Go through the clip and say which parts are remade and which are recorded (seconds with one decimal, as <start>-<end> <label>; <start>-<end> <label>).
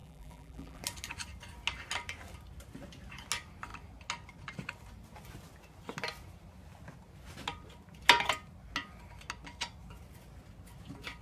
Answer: 0.0-0.8 remade; 0.8-11.2 recorded